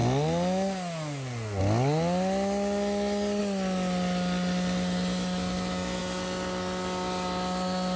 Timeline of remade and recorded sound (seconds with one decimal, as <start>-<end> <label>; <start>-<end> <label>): 0.0-8.0 recorded